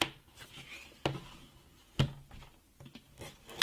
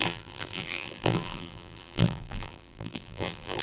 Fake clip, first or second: second